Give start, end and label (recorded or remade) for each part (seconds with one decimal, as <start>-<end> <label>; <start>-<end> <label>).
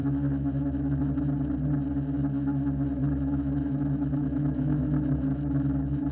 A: 0.0-1.0 remade; 1.0-3.0 recorded; 3.0-6.1 remade